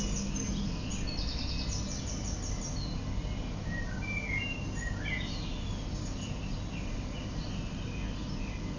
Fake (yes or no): no